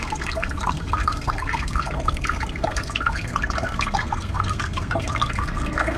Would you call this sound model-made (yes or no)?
yes